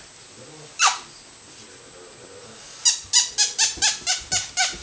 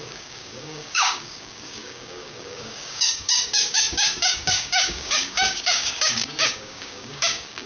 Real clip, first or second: first